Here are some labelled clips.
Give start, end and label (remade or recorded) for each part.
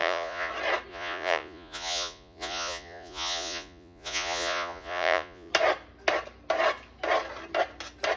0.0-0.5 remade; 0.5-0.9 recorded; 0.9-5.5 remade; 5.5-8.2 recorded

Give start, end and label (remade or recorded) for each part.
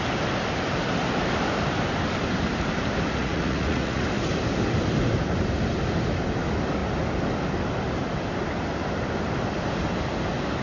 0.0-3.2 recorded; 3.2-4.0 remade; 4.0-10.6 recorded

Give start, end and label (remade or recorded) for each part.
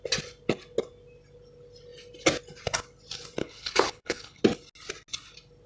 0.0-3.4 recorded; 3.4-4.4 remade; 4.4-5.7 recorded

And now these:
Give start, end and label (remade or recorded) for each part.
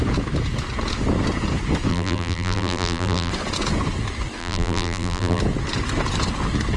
0.0-1.9 recorded; 1.9-3.3 remade; 3.3-4.4 recorded; 4.4-5.4 remade; 5.4-6.8 recorded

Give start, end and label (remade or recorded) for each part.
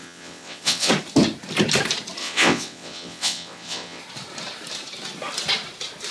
0.0-0.9 remade; 0.9-2.2 recorded; 2.2-4.0 remade; 4.0-6.1 recorded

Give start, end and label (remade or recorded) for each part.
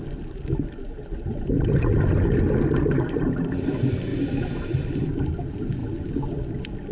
0.0-6.9 recorded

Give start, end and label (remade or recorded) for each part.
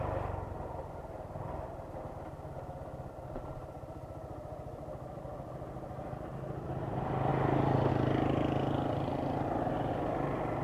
0.0-10.6 recorded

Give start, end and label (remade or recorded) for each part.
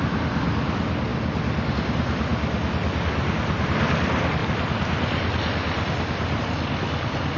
0.0-7.4 recorded